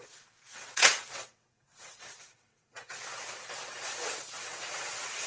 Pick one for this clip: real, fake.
fake